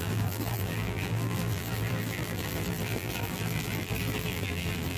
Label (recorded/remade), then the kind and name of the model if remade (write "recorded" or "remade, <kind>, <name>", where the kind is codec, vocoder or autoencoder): remade, vocoder, BigVGAN v2